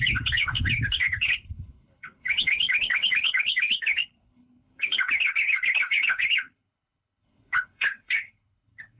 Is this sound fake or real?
fake